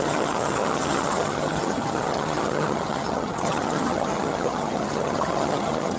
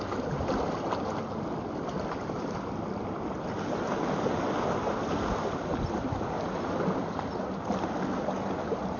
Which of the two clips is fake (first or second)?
first